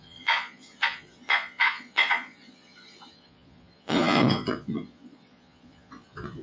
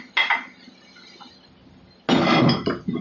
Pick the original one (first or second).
second